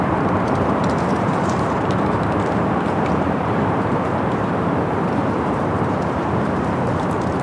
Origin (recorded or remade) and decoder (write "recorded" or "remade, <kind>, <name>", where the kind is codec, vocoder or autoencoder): remade, vocoder, BigVGAN v2